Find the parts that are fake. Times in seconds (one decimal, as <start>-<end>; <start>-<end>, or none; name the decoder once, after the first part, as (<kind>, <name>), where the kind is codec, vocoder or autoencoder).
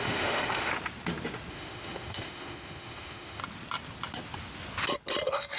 0.0-0.7 (autoencoder, DAC-VAE); 1.5-3.4